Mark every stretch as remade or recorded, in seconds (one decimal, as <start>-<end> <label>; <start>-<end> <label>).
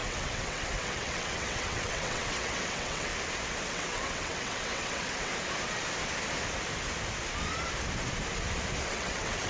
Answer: 0.0-3.1 remade; 3.1-3.7 recorded; 3.7-5.3 remade; 5.3-8.9 recorded; 8.9-9.5 remade